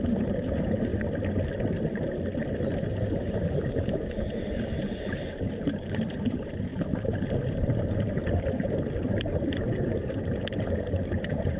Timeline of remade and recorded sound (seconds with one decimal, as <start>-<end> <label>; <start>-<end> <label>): 0.0-0.9 remade; 0.9-2.8 recorded; 2.8-6.7 remade; 6.7-7.4 recorded; 7.4-11.6 remade